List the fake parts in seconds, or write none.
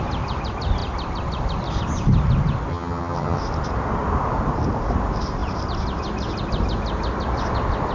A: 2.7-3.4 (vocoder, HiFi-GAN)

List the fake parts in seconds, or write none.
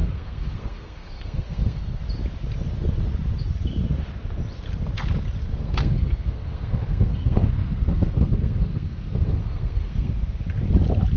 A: 0.0-2.0 (codec, SNAC); 5.5-10.1